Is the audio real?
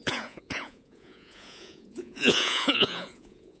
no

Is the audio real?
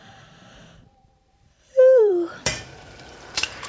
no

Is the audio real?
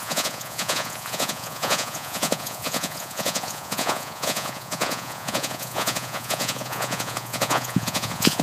no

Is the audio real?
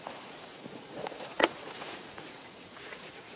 no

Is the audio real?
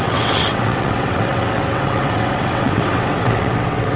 no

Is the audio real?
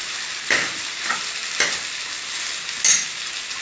yes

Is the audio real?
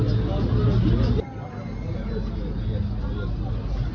yes